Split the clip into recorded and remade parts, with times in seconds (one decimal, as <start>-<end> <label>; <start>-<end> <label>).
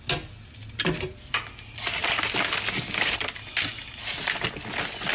0.0-0.6 recorded; 0.6-1.4 remade; 1.4-5.1 recorded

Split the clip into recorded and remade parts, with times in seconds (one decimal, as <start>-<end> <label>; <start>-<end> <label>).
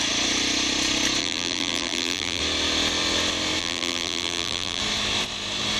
0.0-1.2 recorded; 1.2-2.4 remade; 2.4-3.6 recorded; 3.6-4.8 remade; 4.8-5.8 recorded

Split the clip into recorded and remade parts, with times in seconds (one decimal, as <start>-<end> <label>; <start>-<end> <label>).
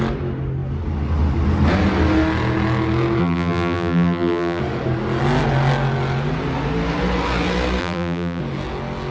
0.0-3.2 recorded; 3.2-4.6 remade; 4.6-7.8 recorded; 7.8-8.4 remade; 8.4-9.1 recorded